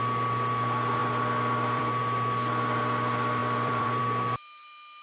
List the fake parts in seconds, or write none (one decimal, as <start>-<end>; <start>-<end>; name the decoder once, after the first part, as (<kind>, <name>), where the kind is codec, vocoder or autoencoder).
1.0-2.0 (vocoder, BigVGAN v2); 3.4-4.0